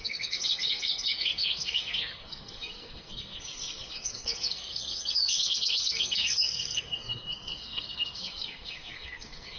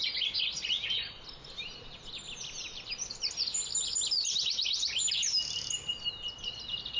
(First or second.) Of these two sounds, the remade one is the first